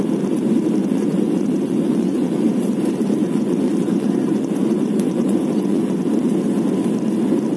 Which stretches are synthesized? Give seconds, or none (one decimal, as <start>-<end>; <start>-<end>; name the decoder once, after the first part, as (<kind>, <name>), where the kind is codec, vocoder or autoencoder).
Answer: 0.8-2.5 (vocoder, Vocos); 3.2-6.3